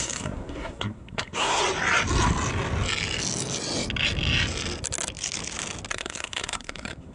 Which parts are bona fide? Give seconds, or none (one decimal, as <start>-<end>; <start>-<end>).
1.6-5.9